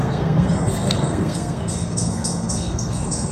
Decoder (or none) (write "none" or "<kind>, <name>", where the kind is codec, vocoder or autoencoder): codec, SNAC